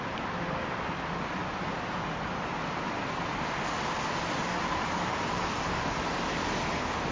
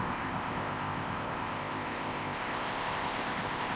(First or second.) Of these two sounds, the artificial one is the second